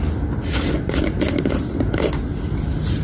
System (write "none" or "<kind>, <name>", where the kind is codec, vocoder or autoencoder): none